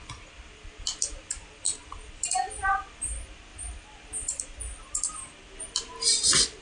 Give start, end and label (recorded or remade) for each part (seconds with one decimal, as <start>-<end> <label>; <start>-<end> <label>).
0.0-6.6 recorded